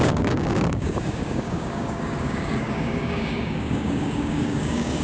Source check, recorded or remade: remade